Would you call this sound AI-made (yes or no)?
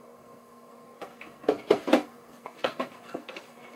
yes